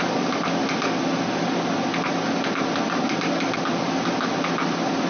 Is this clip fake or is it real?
real